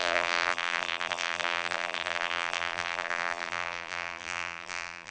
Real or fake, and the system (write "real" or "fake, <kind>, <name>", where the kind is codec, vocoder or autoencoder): fake, vocoder, BigVGAN v2